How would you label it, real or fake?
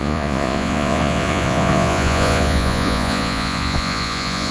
fake